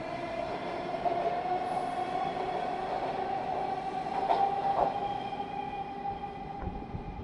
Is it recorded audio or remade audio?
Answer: recorded